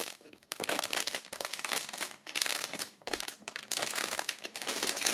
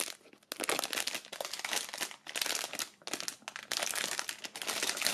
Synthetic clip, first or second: first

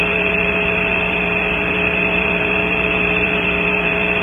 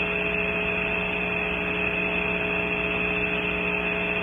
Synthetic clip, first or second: first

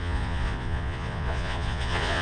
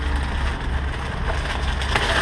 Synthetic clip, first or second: first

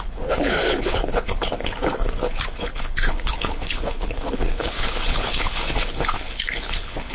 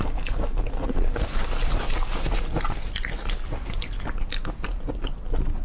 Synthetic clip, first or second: first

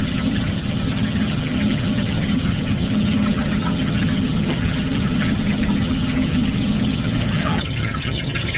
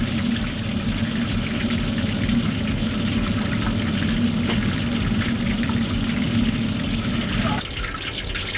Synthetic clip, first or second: first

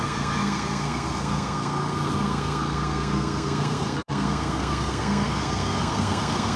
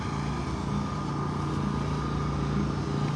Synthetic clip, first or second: first